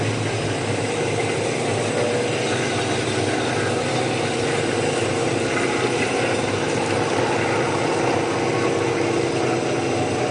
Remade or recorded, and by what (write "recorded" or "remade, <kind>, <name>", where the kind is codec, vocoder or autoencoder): recorded